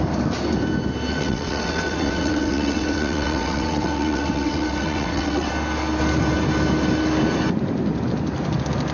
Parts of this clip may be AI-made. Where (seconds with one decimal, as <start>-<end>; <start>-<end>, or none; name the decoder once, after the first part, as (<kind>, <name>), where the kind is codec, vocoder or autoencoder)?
1.1-5.5 (vocoder, WaveNeXt)